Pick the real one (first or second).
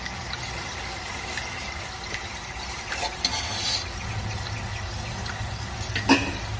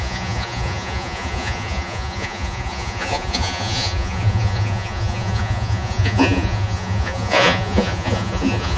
first